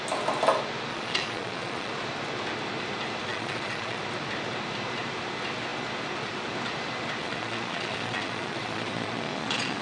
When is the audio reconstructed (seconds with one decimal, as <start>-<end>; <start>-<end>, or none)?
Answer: 0.9-1.9; 3.3-4.0; 7.2-9.8